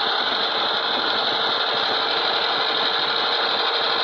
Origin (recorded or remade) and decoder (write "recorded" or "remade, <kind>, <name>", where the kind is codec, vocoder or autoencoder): recorded